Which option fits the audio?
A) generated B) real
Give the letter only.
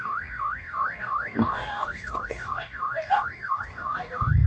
A